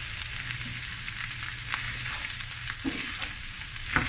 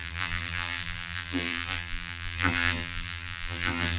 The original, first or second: first